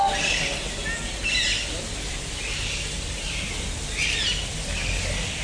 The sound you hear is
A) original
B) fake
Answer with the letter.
A